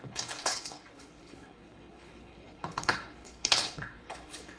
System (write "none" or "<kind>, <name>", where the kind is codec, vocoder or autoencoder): codec, HILCodec